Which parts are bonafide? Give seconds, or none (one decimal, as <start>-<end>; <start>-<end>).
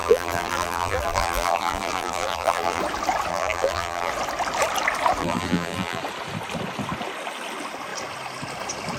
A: 2.8-3.3; 4.1-5.2; 6.0-9.0